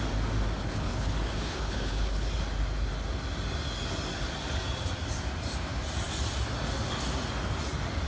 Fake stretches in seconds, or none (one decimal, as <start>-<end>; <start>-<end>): 0.6-2.3